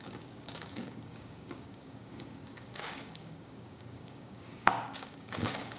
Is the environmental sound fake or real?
fake